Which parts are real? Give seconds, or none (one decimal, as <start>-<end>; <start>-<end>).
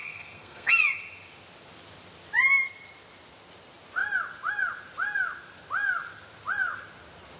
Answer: 0.7-7.4